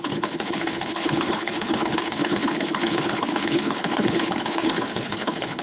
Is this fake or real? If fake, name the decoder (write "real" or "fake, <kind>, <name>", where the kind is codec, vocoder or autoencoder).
fake, codec, HILCodec